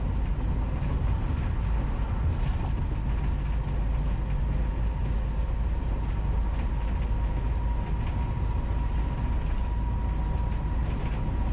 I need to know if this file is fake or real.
real